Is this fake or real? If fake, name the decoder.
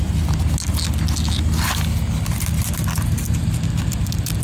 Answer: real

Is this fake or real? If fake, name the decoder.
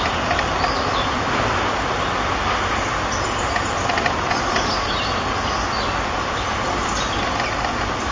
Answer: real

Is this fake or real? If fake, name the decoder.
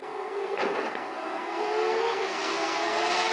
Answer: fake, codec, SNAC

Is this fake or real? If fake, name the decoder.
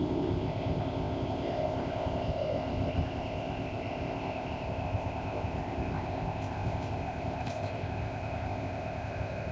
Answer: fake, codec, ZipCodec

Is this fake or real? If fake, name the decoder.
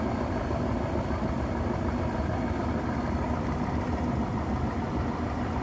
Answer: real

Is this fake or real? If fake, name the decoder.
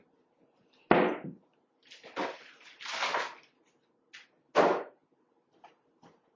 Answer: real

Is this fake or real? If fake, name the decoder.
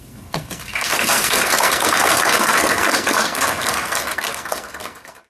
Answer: fake, codec, SNAC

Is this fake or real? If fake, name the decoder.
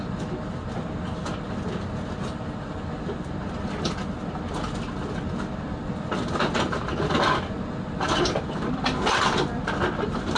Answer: real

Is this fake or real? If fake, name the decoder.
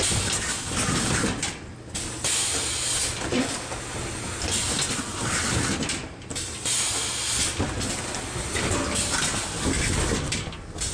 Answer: real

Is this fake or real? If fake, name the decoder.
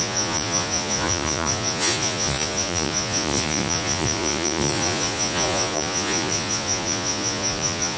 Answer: fake, vocoder, Vocos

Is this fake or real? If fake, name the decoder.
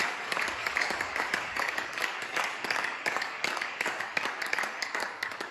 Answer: fake, codec, DAC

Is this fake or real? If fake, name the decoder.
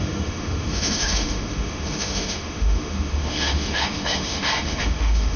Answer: fake, autoencoder, DAC-VAE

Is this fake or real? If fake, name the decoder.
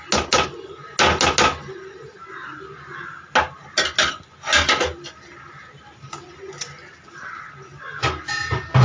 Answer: real